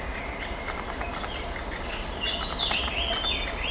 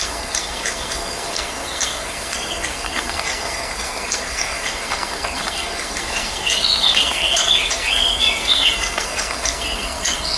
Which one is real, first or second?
first